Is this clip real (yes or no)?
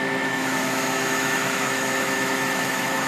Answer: no